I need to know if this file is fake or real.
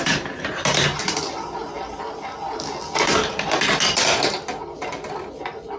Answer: real